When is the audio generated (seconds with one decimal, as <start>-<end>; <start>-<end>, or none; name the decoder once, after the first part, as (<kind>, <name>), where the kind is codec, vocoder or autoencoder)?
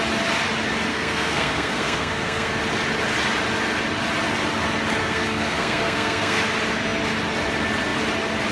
0.9-2.6 (codec, SNAC); 5.0-6.4